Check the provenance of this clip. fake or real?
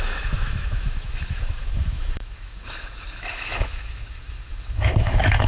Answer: fake